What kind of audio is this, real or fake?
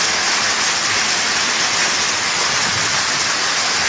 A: real